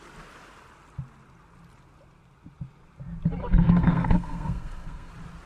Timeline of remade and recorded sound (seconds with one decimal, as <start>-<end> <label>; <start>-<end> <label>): 0.0-3.4 recorded; 3.4-5.1 remade; 5.1-5.5 recorded